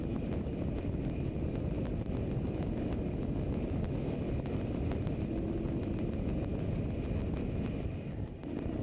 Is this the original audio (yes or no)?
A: yes